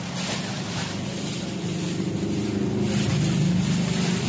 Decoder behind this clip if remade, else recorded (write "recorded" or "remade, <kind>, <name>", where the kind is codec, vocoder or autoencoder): recorded